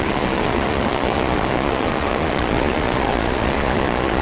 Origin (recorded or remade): remade